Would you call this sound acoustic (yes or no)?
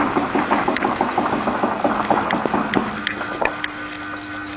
yes